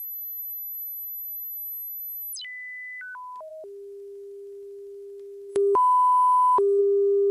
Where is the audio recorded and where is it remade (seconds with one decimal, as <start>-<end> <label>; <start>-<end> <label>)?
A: 0.0-5.5 recorded; 5.5-6.8 remade; 6.8-7.3 recorded